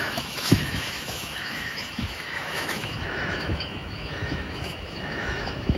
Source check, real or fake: fake